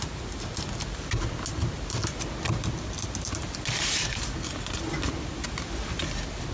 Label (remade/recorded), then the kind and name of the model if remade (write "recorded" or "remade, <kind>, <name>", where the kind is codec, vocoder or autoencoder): recorded